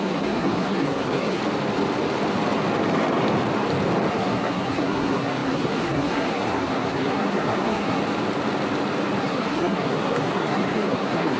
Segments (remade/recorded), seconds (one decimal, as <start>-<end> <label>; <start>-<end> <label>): 0.0-1.4 remade; 1.4-4.1 recorded; 4.1-8.0 remade; 8.0-9.2 recorded; 9.2-11.4 remade